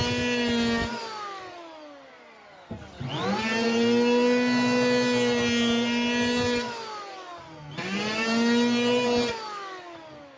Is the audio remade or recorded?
recorded